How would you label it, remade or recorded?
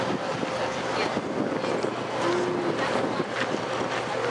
recorded